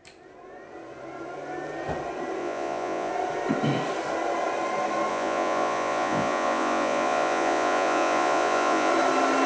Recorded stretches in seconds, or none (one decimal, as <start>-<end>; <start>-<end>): 0.0-2.4; 3.1-5.1; 8.9-9.5